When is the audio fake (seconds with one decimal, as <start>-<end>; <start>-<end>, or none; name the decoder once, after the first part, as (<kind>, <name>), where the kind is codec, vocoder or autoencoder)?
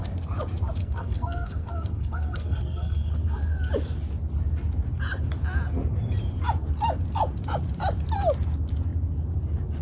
0.8-3.7 (codec, SNAC)